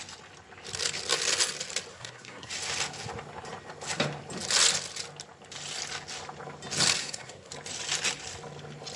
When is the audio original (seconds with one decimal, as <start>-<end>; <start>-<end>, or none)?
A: 0.0-1.9; 2.5-7.0; 7.5-9.0